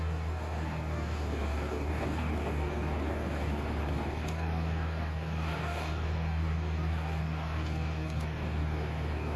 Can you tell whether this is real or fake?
fake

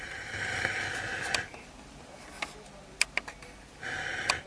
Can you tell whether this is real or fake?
real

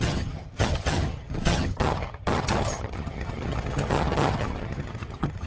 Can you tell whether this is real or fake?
fake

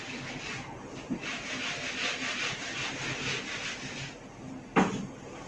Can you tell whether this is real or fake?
real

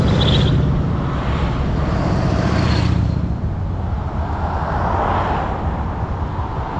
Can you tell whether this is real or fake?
real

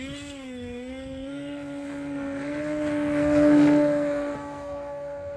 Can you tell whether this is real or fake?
fake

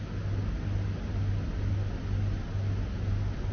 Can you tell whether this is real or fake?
real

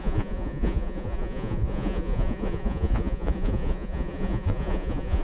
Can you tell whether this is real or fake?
fake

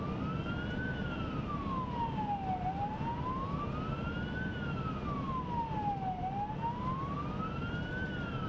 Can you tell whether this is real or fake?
real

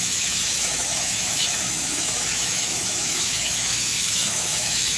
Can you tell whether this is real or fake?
fake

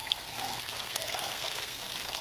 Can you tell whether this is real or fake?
fake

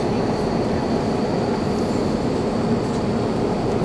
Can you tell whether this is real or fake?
real